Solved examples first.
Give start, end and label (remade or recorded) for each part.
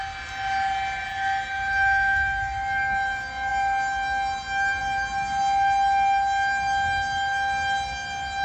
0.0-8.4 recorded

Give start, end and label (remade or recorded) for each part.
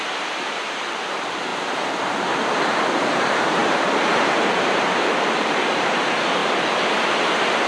0.0-1.5 remade; 1.5-3.1 recorded; 3.1-7.7 remade